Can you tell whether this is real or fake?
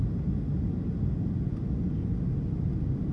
real